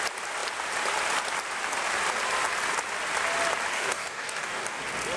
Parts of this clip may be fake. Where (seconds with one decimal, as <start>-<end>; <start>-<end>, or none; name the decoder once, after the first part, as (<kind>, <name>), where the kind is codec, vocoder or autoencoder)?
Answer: 3.7-4.8 (codec, DAC)